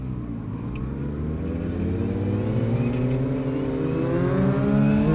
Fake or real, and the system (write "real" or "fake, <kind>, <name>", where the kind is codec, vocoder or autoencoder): real